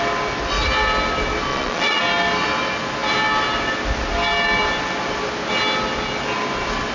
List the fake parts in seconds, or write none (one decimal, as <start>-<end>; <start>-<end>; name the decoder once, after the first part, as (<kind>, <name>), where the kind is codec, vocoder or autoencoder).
1.5-2.0 (vocoder, Vocos)